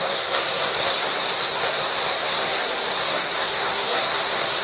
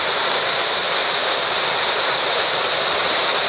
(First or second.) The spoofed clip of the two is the first